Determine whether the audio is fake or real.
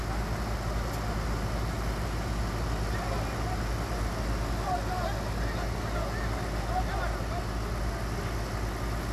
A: real